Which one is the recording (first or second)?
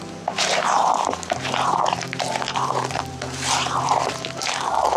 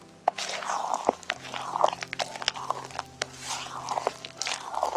second